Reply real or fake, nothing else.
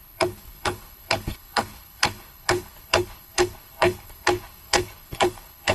fake